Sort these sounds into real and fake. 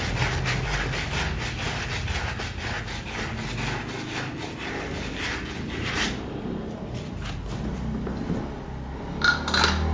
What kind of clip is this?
real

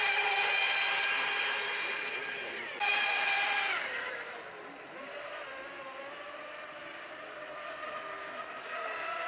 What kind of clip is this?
real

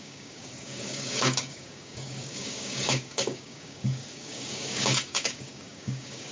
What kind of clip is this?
fake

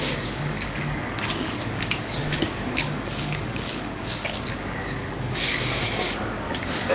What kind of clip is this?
fake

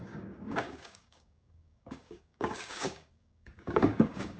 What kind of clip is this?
fake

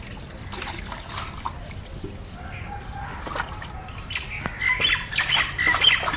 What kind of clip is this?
real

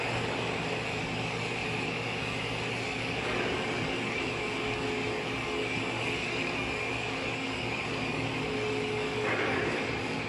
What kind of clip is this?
fake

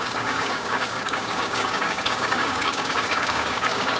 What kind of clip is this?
fake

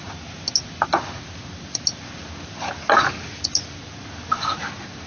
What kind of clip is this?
real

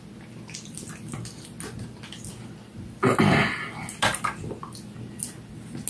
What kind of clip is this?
real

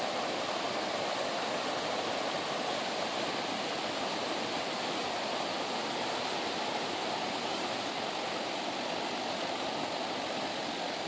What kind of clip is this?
real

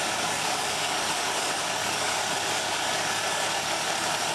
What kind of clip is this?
fake